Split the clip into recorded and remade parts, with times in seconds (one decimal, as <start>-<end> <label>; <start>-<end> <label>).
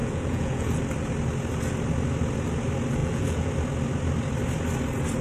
0.0-0.8 remade; 0.8-3.0 recorded; 3.0-3.5 remade; 3.5-5.2 recorded